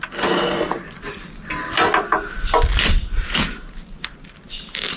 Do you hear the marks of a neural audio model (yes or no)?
no